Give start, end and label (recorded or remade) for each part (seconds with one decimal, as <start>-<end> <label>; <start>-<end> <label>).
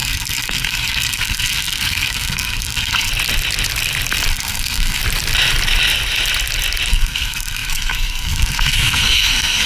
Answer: 0.0-3.1 remade; 3.1-4.3 recorded; 4.3-5.0 remade; 5.0-6.9 recorded; 6.9-9.7 remade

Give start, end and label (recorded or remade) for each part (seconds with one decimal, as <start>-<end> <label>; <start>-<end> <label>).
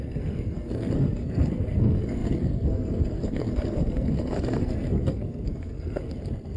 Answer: 0.0-6.6 remade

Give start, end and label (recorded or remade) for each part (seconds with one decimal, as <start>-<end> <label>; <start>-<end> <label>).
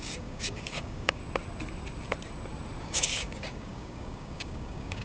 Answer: 0.0-1.2 remade; 1.2-2.8 recorded; 2.8-5.0 remade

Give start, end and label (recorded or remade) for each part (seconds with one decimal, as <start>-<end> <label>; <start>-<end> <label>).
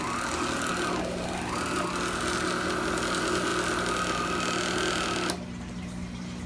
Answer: 0.0-6.5 recorded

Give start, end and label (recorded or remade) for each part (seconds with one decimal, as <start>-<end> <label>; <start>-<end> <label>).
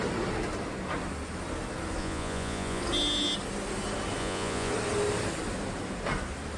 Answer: 0.0-2.0 recorded; 2.0-2.8 remade; 2.8-4.2 recorded; 4.2-4.7 remade; 4.7-6.6 recorded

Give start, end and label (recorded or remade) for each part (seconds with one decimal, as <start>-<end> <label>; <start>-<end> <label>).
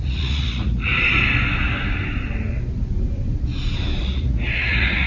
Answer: 0.0-0.9 remade; 0.9-4.0 recorded; 4.0-5.1 remade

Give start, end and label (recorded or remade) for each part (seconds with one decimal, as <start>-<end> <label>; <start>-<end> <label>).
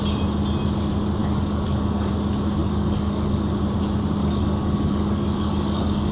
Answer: 0.0-1.2 recorded; 1.2-2.1 remade; 2.1-2.6 recorded; 2.6-3.5 remade; 3.5-4.2 recorded; 4.2-6.1 remade